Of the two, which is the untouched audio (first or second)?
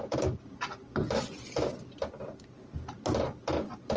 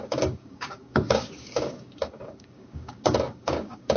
first